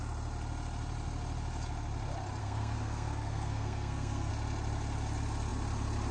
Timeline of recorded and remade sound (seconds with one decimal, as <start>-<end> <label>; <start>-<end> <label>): 0.0-2.4 recorded; 2.4-4.3 remade; 4.3-6.1 recorded